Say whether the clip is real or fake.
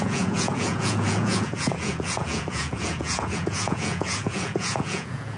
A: fake